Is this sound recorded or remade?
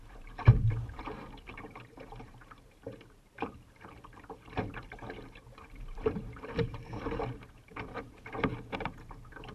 remade